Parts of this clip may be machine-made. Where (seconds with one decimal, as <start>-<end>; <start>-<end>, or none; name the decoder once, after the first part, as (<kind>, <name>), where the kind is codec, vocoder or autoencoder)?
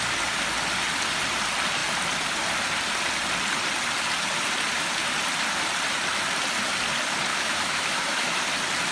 7.3-8.4 (autoencoder, DAC-VAE)